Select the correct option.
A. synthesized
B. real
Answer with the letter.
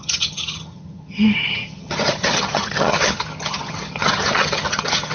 A